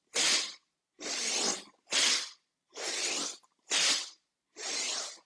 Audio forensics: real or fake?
real